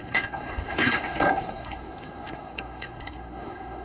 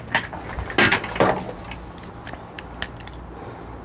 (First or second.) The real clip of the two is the second